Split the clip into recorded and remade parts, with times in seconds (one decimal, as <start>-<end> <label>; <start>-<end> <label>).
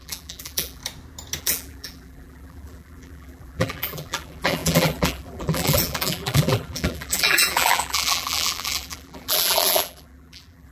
0.0-0.8 remade; 0.8-1.4 recorded; 1.4-10.7 remade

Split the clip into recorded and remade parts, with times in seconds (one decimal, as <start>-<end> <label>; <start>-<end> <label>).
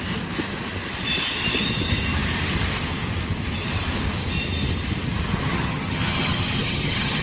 0.0-5.5 recorded; 5.5-7.2 remade